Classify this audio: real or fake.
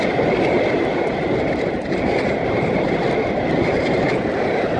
real